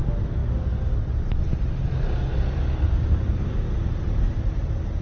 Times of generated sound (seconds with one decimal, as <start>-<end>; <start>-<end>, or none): none